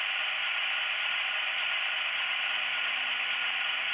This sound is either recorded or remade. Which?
recorded